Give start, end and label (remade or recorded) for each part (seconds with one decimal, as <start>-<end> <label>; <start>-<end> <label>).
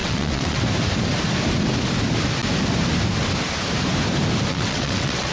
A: 0.0-0.6 remade; 0.6-4.5 recorded; 4.5-5.3 remade